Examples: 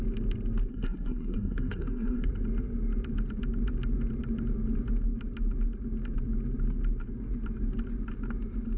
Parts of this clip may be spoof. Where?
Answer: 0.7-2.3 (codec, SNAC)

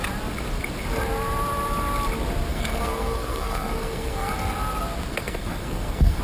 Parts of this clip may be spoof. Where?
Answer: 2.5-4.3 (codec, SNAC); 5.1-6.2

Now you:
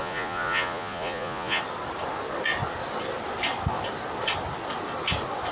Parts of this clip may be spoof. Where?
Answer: 0.0-1.6 (vocoder, Vocos)

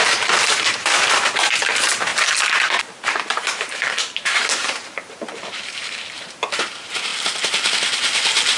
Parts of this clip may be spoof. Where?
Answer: 0.0-2.1 (vocoder, BigVGAN v2); 2.8-7.1; 7.7-8.6

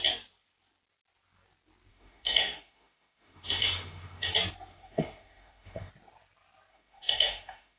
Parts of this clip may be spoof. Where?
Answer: 1.9-4.3 (autoencoder, DAC-VAE); 4.7-5.9; 6.7-7.8

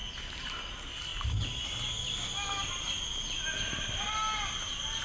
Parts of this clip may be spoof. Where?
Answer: none

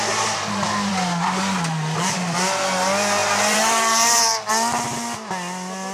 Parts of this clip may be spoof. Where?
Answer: 3.2-4.5 (vocoder, BigVGAN v2)

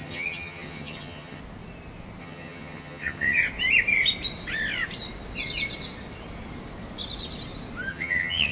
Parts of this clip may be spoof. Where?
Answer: 0.0-1.4 (vocoder, HiFi-GAN); 2.2-3.4; 7.9-8.5